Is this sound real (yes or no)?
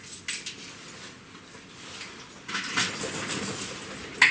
yes